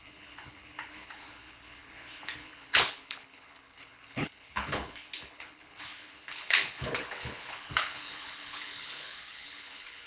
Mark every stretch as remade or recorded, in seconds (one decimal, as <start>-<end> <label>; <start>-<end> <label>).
0.0-10.1 remade